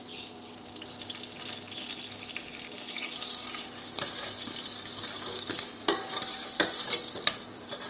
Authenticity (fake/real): fake